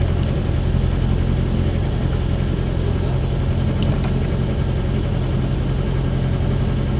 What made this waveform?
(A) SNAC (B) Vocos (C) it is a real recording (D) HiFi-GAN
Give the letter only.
C